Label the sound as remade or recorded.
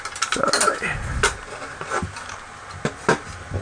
recorded